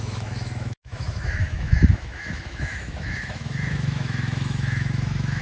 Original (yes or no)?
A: no